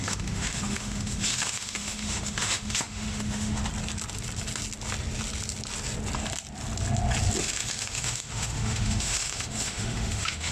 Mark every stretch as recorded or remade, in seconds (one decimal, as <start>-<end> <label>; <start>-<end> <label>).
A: 0.0-3.6 remade; 3.6-7.4 recorded; 7.4-10.5 remade